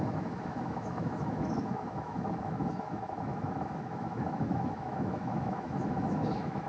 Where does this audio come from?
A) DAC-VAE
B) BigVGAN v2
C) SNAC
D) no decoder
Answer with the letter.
A